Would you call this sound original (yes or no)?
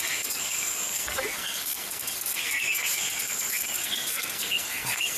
no